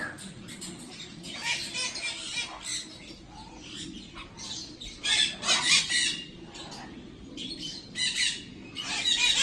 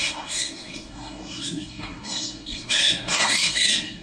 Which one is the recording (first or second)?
first